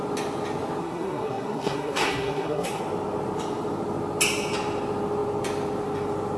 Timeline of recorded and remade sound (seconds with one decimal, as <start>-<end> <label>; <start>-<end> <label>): 0.0-0.8 recorded; 0.8-2.8 remade; 2.8-6.4 recorded